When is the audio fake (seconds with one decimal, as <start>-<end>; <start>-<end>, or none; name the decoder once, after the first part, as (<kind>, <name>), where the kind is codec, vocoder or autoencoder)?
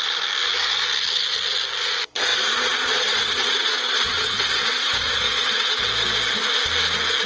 2.3-5.8 (vocoder, Vocos)